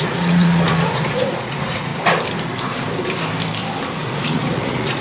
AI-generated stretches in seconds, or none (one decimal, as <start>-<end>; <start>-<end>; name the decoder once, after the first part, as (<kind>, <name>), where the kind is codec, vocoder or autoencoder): 0.0-1.9 (vocoder, Vocos); 3.9-5.0